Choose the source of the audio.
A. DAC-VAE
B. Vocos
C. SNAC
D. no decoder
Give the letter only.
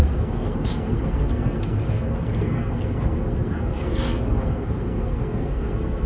C